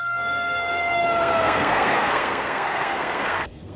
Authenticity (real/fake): fake